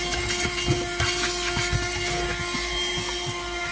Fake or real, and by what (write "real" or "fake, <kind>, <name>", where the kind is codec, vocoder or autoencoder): real